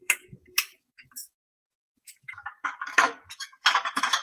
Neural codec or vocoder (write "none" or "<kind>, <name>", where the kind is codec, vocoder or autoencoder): codec, DAC